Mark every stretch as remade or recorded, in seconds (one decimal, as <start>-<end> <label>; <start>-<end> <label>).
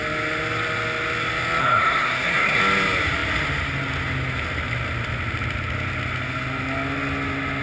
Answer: 0.0-1.6 recorded; 1.6-2.6 remade; 2.6-7.6 recorded